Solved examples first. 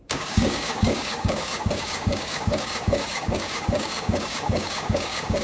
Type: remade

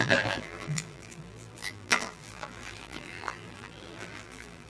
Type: remade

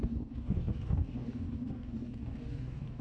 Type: remade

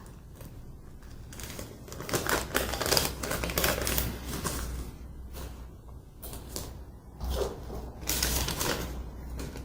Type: recorded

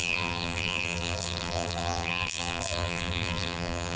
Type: remade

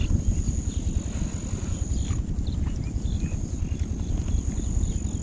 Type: recorded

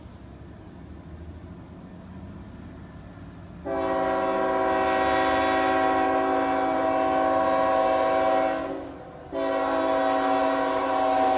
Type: recorded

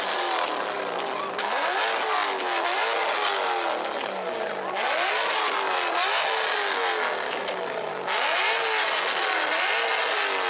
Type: recorded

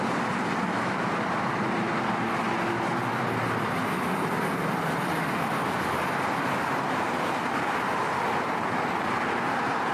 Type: recorded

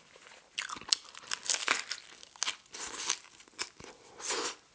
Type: recorded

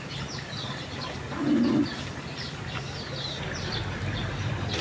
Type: recorded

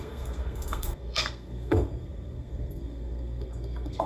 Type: remade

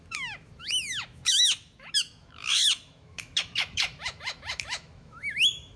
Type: remade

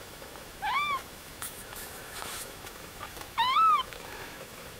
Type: remade